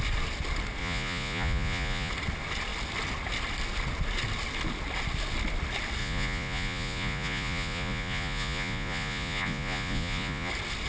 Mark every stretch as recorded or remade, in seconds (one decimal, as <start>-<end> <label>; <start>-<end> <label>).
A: 0.0-0.8 recorded; 0.8-2.1 remade; 2.1-6.0 recorded; 6.0-10.5 remade; 10.5-10.9 recorded